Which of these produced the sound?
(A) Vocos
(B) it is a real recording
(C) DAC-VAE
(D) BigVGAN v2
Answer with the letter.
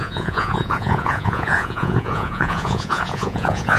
A